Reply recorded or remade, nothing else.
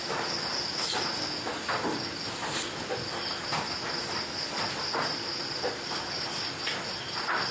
recorded